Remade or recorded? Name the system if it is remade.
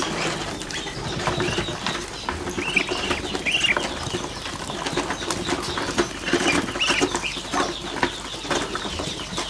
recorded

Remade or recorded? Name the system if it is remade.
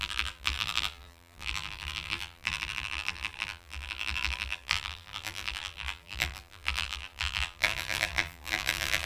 remade, vocoder, BigVGAN v2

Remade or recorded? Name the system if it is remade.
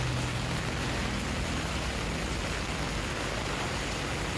recorded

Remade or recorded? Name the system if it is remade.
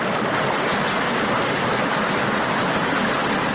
recorded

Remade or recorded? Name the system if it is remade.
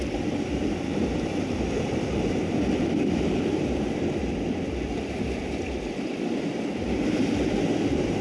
remade, vocoder, BigVGAN v2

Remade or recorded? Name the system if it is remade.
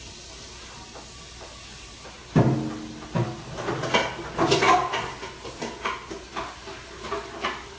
recorded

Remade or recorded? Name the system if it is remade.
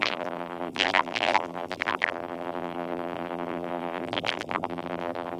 remade, vocoder, BigVGAN v2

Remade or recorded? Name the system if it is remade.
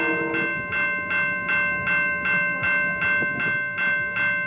recorded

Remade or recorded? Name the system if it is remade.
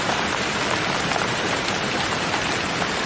remade, vocoder, BigVGAN v2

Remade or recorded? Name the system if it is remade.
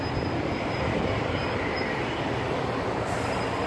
recorded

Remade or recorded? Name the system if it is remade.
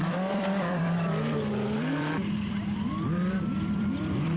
remade, vocoder, BigVGAN v2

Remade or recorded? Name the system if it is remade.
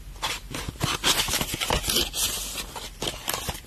recorded